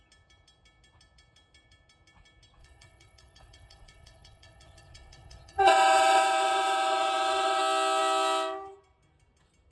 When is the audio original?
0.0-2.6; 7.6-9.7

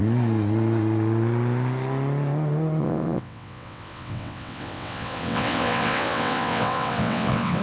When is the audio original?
0.0-2.8

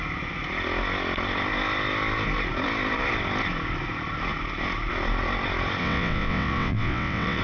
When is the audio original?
0.0-5.8

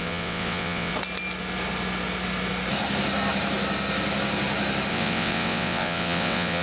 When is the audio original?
0.9-4.9